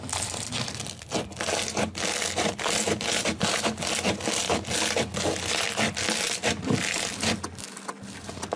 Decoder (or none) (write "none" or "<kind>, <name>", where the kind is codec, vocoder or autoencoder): none